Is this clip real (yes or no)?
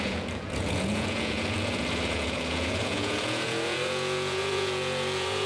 no